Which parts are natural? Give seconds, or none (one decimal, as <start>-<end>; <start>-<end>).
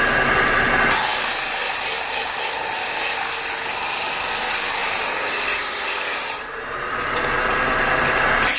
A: 0.0-4.8; 7.7-8.6